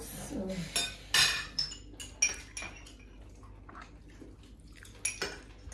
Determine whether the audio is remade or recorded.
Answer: recorded